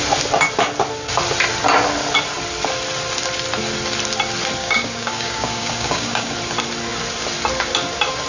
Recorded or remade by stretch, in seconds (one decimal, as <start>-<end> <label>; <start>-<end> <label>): 0.0-4.6 recorded; 4.6-6.3 remade; 6.3-8.3 recorded